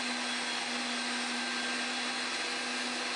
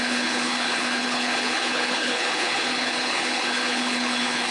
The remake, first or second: second